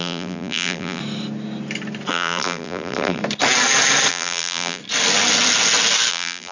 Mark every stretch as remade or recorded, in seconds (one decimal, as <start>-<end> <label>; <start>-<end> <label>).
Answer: 0.0-1.0 remade; 1.0-2.1 recorded; 2.1-3.2 remade; 3.2-4.1 recorded; 4.1-4.8 remade; 4.8-6.1 recorded; 6.1-6.5 remade